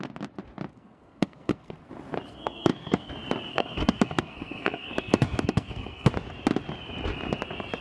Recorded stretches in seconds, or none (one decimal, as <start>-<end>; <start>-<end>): 0.0-0.7; 1.9-2.3; 3.1-3.5; 6.1-7.8